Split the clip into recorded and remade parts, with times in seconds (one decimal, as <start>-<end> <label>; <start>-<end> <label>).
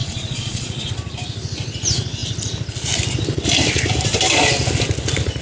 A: 0.0-0.9 remade; 0.9-5.4 recorded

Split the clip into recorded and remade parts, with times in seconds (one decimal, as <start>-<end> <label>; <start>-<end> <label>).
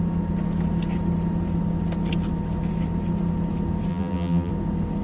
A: 0.0-3.9 recorded; 3.9-4.5 remade; 4.5-5.0 recorded